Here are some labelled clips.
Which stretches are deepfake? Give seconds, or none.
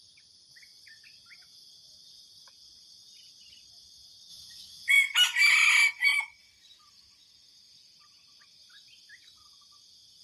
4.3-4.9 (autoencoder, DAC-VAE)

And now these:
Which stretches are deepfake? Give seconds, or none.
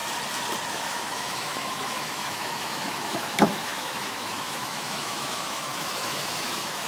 0.7-6.9 (autoencoder, DAC-VAE)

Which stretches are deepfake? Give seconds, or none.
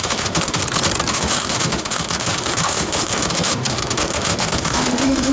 0.0-0.6 (autoencoder, DAC-VAE); 1.1-5.3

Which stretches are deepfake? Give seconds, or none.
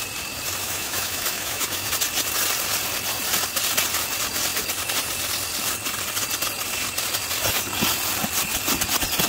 0.6-1.9 (autoencoder, DAC-VAE)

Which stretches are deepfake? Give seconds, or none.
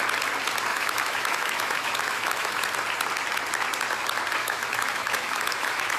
0.7-2.6 (autoencoder, DAC-VAE); 4.4-6.0